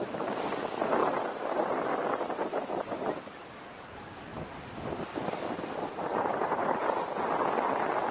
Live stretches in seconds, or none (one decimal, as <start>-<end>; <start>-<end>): 0.0-1.0; 1.8-6.1; 7.0-8.1